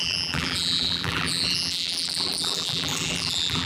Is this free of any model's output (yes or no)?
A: no